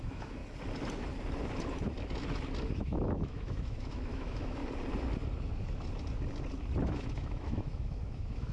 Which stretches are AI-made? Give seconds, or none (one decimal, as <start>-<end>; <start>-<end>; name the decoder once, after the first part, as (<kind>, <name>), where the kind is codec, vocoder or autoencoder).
0.0-0.4 (autoencoder, DAC-VAE); 2.8-4.6; 6.8-8.5